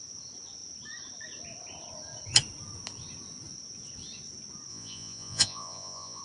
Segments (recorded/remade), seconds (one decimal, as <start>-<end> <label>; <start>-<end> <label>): 0.0-4.7 recorded; 4.7-6.2 remade